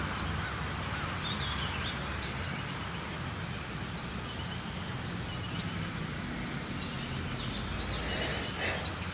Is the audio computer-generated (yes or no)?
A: no